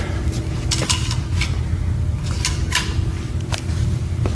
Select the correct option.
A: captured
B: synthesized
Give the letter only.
A